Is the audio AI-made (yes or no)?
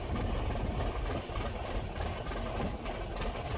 yes